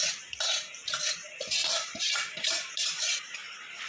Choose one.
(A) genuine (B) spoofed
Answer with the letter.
B